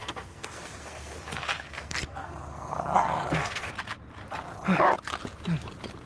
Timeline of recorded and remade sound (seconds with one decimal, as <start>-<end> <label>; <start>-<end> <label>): 0.0-3.7 remade; 3.7-6.1 recorded

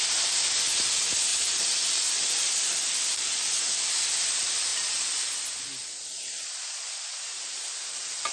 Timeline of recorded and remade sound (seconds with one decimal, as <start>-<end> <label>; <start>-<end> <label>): 0.0-1.3 recorded; 1.3-3.9 remade; 3.9-8.3 recorded

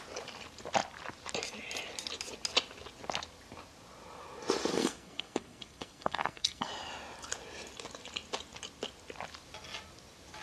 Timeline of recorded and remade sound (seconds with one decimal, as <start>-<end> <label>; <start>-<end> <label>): 0.0-4.7 recorded; 4.7-6.7 remade; 6.7-10.4 recorded

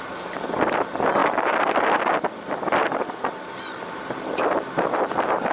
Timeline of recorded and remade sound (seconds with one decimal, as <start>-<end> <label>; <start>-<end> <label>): 0.0-5.5 recorded